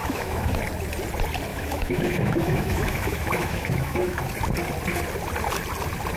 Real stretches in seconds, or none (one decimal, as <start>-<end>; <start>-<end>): 0.6-1.5; 4.2-6.2